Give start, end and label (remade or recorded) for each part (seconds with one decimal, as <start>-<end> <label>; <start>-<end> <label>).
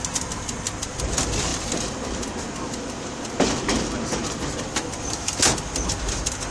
0.0-6.5 recorded